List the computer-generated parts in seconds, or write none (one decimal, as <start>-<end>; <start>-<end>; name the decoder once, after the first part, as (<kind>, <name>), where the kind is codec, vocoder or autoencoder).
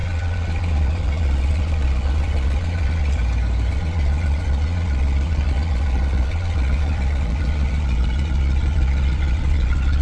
0.0-3.2 (vocoder, Vocos); 3.7-10.0